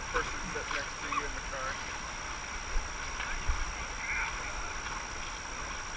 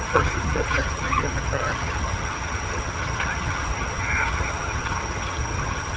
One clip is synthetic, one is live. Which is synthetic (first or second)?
second